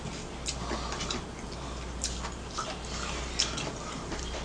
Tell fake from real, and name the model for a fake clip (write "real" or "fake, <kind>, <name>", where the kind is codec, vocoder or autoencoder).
real